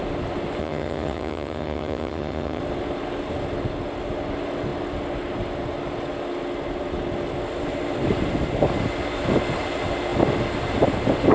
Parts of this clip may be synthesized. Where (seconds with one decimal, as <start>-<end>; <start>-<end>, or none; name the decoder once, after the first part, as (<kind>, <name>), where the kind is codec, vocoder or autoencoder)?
0.6-2.6 (vocoder, HiFi-GAN)